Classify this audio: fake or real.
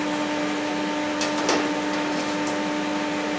real